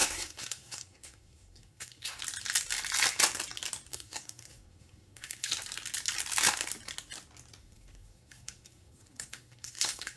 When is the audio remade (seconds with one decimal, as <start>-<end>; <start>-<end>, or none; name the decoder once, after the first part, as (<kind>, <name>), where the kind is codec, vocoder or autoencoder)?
0.0-2.2 (codec, SNAC); 3.9-5.5; 7.6-10.2